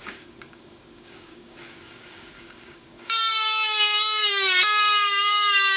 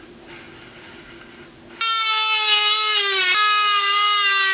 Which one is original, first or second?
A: second